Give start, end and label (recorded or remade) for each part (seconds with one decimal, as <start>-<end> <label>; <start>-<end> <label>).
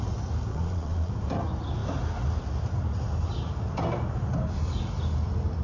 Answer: 0.0-0.5 recorded; 0.5-1.1 remade; 1.1-5.6 recorded